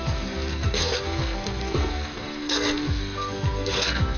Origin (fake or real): fake